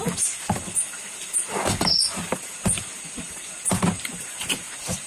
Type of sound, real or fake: real